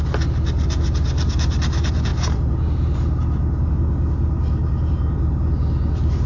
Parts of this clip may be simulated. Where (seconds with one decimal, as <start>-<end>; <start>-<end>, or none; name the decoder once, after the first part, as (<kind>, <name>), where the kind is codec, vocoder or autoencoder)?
none